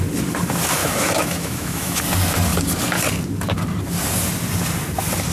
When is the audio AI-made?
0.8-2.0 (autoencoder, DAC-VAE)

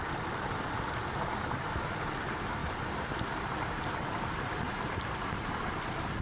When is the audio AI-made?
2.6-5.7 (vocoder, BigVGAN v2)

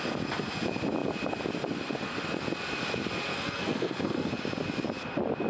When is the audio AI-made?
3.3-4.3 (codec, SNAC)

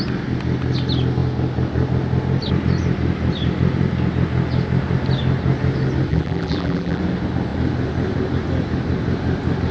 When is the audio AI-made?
6.1-7.0 (vocoder, BigVGAN v2)